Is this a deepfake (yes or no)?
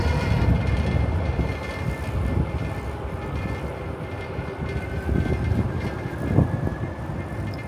no